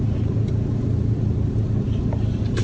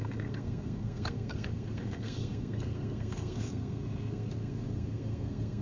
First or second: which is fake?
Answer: second